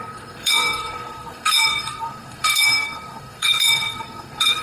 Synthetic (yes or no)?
yes